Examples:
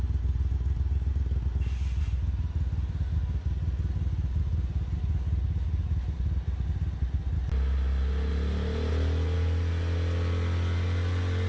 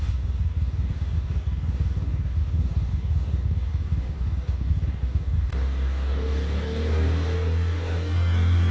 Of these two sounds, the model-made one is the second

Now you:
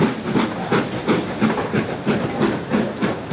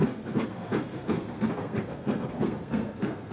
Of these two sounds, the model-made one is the second